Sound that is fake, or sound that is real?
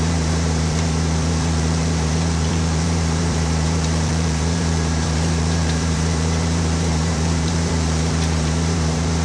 fake